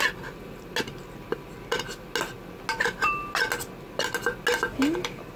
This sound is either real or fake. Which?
real